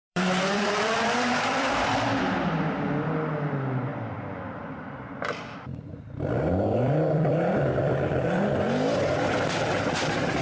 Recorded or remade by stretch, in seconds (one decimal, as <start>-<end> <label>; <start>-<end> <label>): 0.0-2.2 remade; 2.2-3.9 recorded; 3.9-5.2 remade; 5.2-5.9 recorded; 5.9-9.0 remade; 9.0-10.4 recorded